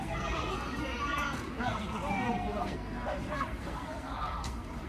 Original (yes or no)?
no